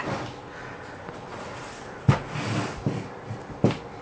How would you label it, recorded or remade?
recorded